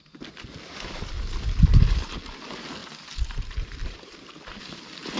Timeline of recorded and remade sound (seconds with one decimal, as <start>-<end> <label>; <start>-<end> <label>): 0.0-5.2 recorded